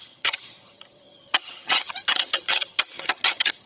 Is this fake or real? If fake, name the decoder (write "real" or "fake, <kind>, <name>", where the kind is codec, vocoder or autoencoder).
fake, vocoder, HiFi-GAN